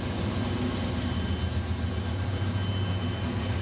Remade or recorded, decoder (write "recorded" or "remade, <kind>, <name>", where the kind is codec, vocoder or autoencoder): recorded